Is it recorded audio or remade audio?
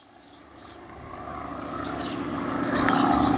remade